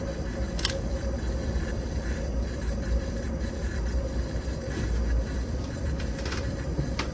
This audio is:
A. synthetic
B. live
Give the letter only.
A